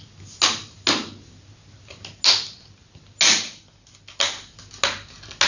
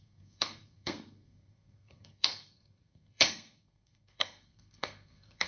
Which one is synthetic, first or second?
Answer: second